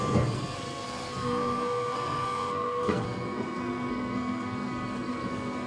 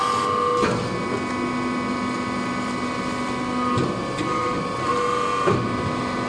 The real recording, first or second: second